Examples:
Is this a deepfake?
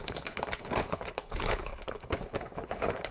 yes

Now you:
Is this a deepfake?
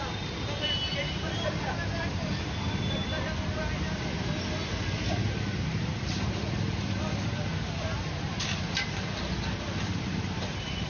no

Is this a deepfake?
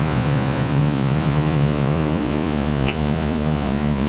yes